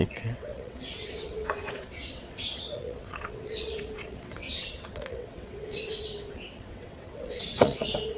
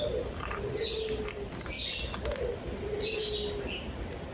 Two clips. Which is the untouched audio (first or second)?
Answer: second